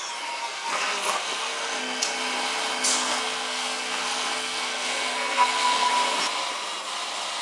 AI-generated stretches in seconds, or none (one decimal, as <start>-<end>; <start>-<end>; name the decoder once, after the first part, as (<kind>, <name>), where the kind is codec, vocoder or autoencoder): 0.4-2.0 (codec, SNAC); 2.9-5.9